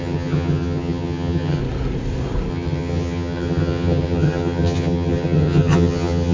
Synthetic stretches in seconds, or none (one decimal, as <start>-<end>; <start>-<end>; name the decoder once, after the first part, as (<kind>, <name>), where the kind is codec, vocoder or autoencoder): 0.0-1.6 (vocoder, HiFi-GAN); 2.5-6.3